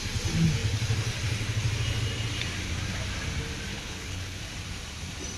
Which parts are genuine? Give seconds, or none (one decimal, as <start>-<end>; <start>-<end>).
0.0-3.7; 4.4-5.4